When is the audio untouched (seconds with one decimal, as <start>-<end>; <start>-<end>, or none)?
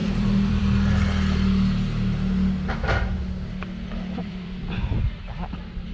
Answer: 0.6-4.2; 4.9-5.9